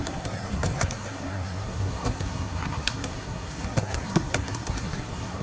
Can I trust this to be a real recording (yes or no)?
no